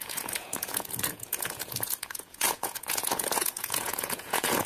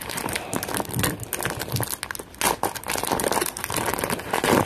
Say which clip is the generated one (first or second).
first